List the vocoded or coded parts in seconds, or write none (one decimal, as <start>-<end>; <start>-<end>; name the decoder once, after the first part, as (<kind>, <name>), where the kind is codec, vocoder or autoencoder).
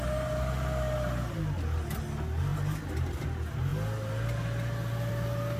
none